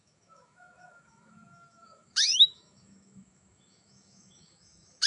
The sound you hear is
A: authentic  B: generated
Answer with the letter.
B